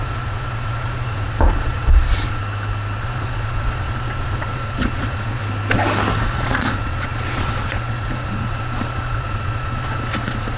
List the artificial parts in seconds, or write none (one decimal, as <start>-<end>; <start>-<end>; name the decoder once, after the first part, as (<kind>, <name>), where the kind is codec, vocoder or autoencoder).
0.0-2.4 (vocoder, Vocos); 3.0-5.4; 6.2-10.6